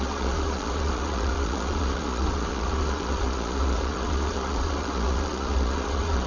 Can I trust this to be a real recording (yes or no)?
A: no